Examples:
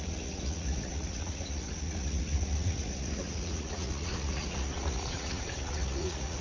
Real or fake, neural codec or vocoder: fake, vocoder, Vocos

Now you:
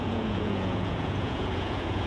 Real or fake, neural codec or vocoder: fake, vocoder, Vocos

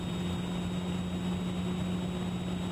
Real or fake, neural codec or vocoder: real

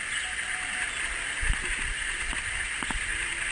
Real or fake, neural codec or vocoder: real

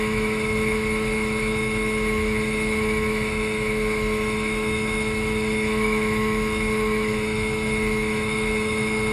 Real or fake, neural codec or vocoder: fake, autoencoder, DAC-VAE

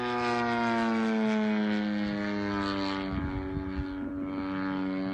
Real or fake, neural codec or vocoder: real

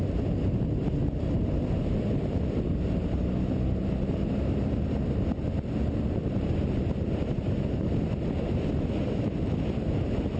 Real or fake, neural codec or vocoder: real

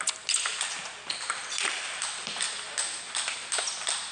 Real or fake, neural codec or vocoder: real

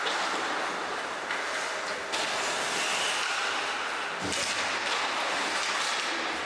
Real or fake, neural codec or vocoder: real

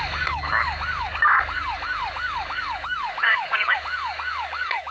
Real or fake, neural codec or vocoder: fake, codec, DAC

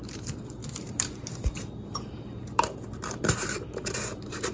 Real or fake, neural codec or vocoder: fake, vocoder, BigVGAN v2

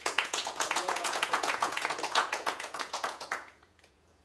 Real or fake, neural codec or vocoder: fake, vocoder, Vocos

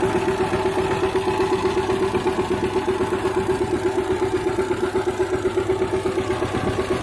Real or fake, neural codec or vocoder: real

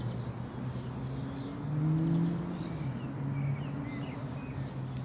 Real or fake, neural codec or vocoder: real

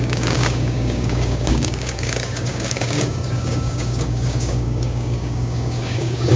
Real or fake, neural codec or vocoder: fake, codec, DAC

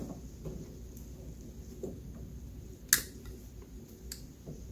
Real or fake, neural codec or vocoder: real